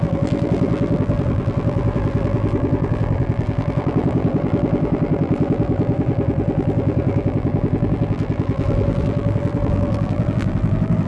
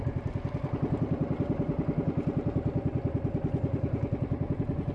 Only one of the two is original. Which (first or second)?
second